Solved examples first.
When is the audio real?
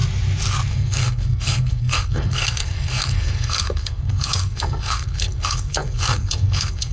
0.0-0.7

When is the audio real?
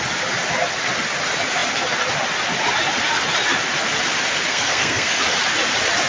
0.0-4.5; 5.2-6.1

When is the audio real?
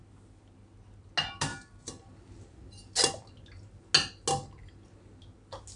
0.0-5.8